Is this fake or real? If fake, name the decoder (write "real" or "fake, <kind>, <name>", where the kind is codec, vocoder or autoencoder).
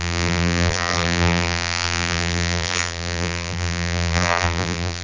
fake, vocoder, BigVGAN v2